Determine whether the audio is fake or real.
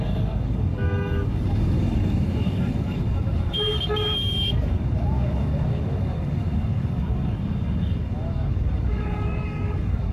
fake